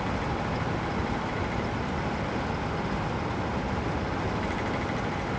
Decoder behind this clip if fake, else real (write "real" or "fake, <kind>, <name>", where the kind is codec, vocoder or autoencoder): real